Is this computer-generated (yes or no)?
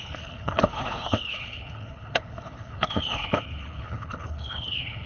yes